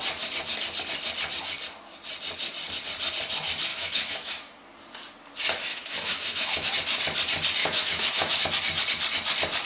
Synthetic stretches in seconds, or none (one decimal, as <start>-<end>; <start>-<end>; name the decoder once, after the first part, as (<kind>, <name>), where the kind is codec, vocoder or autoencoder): 3.7-4.5 (autoencoder, DAC-VAE); 5.7-6.7; 7.6-8.4